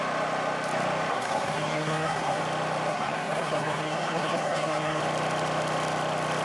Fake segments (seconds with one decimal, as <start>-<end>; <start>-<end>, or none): 1.1-2.4; 2.9-5.0